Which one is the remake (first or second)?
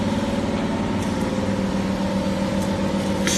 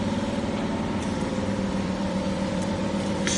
second